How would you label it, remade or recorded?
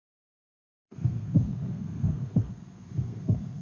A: remade